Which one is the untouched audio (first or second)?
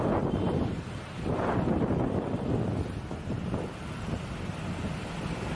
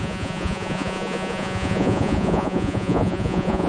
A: first